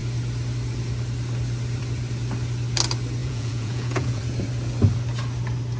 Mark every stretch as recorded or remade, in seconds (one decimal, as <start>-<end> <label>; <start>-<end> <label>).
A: 0.0-3.2 recorded; 3.2-4.2 remade; 4.2-5.8 recorded